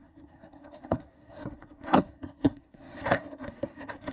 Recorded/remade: remade